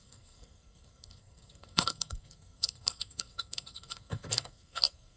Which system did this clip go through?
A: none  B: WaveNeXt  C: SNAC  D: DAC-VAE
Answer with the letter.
C